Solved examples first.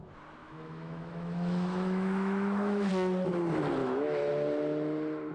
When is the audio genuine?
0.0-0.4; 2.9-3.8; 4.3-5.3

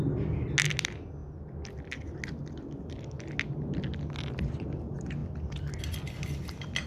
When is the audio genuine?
0.0-6.9